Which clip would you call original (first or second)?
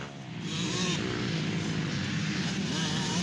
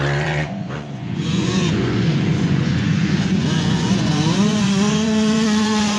first